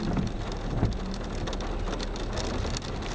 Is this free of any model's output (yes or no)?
yes